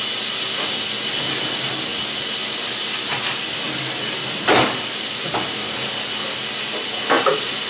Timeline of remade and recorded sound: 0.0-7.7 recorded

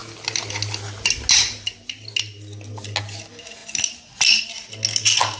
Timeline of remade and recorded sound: 0.0-5.4 recorded

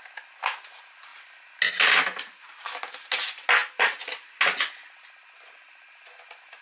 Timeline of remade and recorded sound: 0.0-6.6 recorded

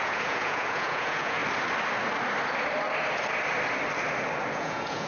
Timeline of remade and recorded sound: 0.0-1.4 remade; 1.4-4.5 recorded; 4.5-5.1 remade

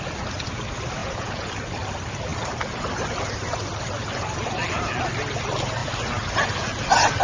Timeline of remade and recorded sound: 0.0-1.0 recorded; 1.0-1.5 remade; 1.5-7.2 recorded

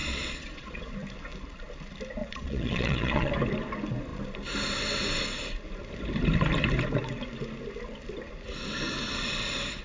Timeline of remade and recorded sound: 0.0-0.9 remade; 0.9-2.2 recorded; 2.2-3.3 remade; 3.3-9.8 recorded

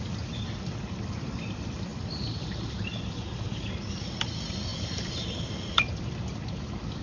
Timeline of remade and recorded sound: 0.0-1.9 recorded; 1.9-4.0 remade; 4.0-4.7 recorded; 4.7-6.4 remade; 6.4-7.0 recorded